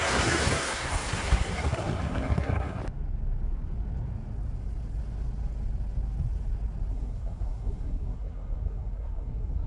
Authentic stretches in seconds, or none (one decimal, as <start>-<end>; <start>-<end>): 2.8-6.9